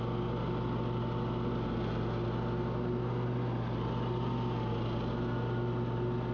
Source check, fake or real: real